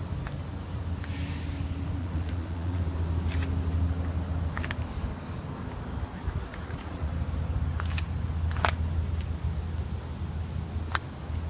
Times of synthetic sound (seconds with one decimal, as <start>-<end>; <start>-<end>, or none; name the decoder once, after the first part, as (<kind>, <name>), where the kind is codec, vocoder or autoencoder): 2.0-2.8 (vocoder, Vocos); 6.5-7.1